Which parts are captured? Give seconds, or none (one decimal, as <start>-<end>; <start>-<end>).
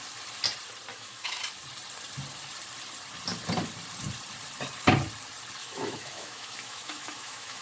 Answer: 0.0-0.9; 1.4-5.6